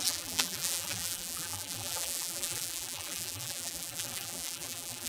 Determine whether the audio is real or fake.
fake